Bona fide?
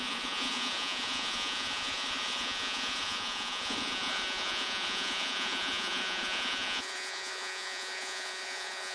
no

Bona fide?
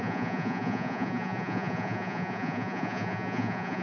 no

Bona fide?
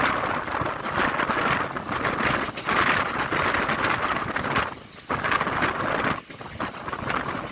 yes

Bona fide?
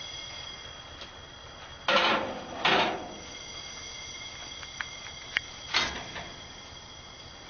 yes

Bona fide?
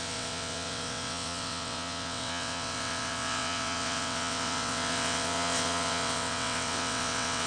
no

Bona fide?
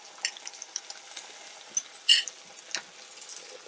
yes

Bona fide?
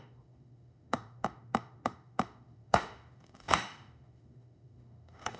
no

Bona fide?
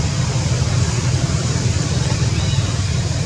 yes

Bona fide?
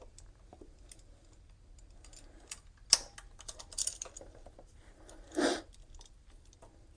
yes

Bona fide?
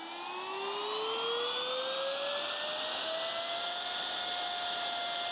yes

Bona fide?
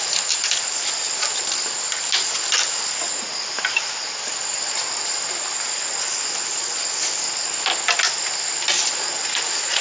yes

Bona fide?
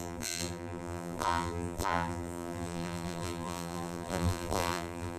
no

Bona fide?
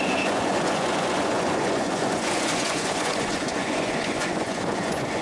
no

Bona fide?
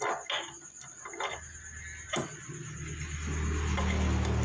yes